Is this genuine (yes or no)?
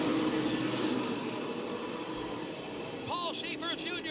yes